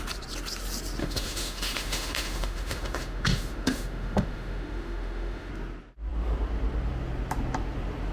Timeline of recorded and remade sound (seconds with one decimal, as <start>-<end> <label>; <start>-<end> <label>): 0.0-1.0 recorded; 1.0-5.5 remade; 5.5-8.1 recorded